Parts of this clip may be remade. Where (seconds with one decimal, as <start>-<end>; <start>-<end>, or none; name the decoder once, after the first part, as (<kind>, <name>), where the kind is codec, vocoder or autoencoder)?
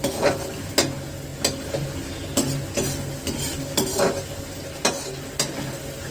none